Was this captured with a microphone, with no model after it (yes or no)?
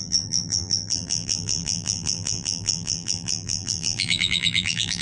no